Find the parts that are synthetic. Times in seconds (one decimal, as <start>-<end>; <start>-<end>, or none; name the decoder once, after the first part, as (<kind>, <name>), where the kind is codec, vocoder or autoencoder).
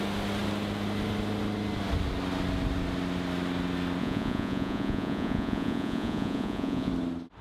4.0-6.9 (vocoder, Vocos)